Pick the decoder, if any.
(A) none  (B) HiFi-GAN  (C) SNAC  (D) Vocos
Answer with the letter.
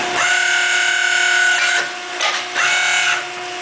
A